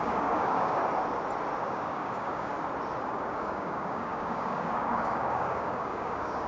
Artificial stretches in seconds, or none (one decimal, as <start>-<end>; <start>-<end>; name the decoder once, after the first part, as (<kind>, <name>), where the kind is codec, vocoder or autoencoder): 0.0-0.8 (codec, DAC); 1.6-2.5; 3.1-6.5